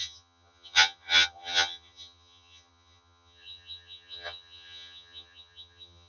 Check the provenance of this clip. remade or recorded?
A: remade